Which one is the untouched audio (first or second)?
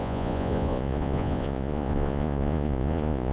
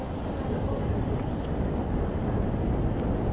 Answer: second